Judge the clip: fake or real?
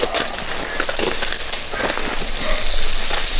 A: real